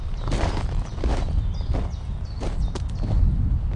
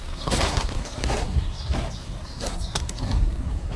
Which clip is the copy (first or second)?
second